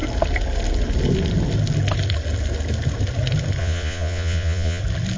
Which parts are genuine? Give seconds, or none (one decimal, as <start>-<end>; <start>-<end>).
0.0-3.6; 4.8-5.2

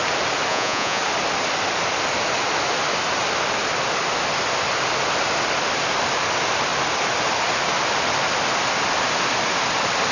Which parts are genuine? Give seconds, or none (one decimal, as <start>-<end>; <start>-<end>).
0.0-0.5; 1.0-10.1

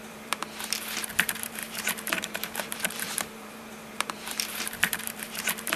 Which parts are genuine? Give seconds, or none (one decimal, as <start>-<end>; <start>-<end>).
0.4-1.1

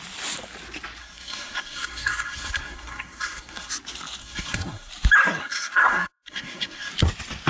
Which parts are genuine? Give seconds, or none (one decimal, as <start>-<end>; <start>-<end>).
0.0-1.0; 3.7-4.2; 4.9-5.4; 6.9-7.5